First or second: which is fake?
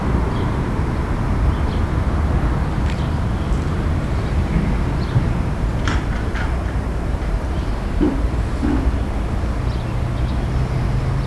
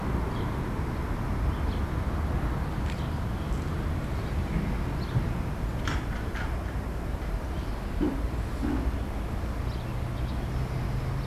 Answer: first